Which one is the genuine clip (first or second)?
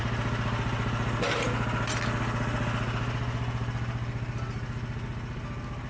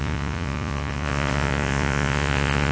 first